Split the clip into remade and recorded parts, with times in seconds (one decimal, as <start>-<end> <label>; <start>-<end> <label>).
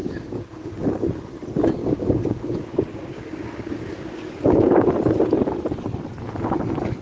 0.0-0.7 remade; 0.7-1.8 recorded; 1.8-4.9 remade; 4.9-7.0 recorded